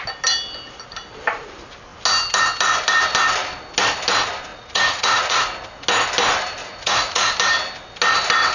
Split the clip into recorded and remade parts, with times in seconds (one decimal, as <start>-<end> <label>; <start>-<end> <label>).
0.0-4.5 recorded; 4.5-5.4 remade; 5.4-6.6 recorded; 6.6-7.3 remade; 7.3-8.5 recorded